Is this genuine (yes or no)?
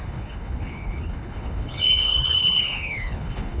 no